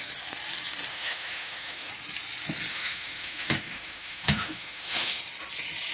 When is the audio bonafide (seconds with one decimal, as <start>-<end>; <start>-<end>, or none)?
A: 0.0-0.9; 1.9-2.7; 5.2-5.9